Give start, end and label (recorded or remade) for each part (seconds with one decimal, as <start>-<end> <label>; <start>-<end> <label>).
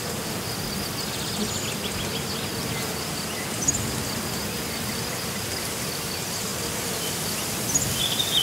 0.0-8.4 recorded